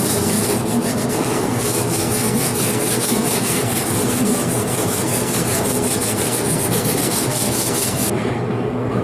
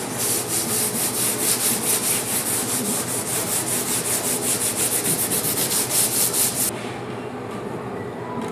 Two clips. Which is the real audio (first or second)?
second